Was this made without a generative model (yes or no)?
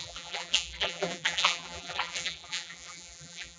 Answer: no